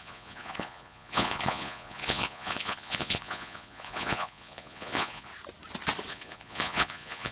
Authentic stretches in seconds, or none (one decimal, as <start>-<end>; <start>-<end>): 5.3-6.1